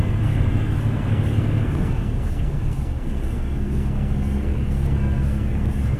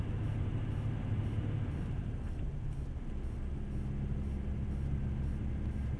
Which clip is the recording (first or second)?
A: second